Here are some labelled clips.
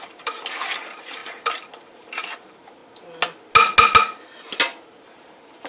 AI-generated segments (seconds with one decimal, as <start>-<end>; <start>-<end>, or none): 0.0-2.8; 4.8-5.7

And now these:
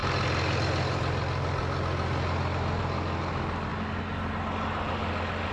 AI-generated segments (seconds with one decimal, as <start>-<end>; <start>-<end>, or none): none

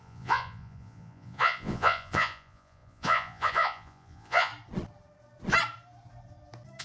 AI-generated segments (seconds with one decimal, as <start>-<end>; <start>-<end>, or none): 0.0-4.5